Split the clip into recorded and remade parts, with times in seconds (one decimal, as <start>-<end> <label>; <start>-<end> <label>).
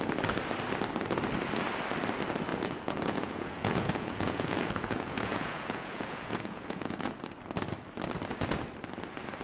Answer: 0.0-2.5 recorded; 2.5-7.1 remade; 7.1-9.4 recorded